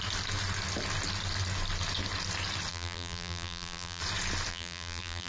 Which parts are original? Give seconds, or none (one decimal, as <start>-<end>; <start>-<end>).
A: 0.0-2.7; 4.0-4.5